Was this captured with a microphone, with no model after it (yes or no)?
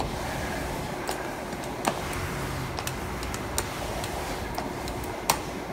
yes